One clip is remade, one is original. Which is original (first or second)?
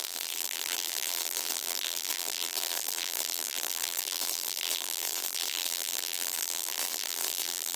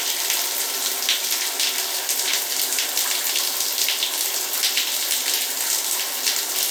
second